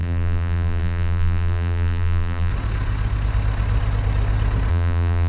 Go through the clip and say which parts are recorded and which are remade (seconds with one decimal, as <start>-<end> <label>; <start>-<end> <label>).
0.0-2.5 remade; 2.5-4.7 recorded; 4.7-5.3 remade